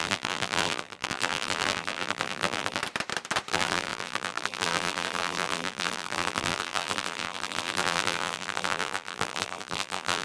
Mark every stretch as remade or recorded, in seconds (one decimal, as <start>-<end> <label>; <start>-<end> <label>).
0.0-2.8 remade; 2.8-3.5 recorded; 3.5-10.2 remade